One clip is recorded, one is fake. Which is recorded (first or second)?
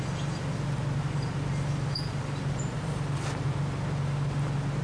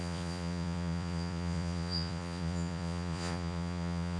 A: first